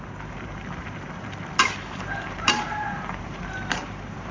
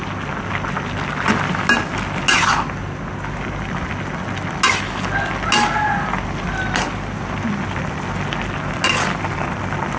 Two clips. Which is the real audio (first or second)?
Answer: second